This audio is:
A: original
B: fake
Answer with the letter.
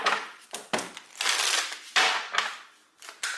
A